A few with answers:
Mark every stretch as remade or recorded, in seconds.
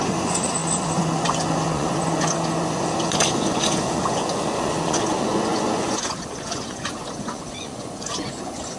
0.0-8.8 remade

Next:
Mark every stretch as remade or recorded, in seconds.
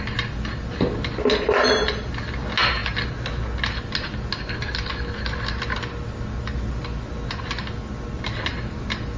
0.0-9.2 recorded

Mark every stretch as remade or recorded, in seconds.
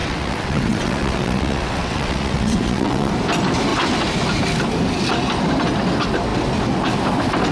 0.0-3.1 remade; 3.1-7.5 recorded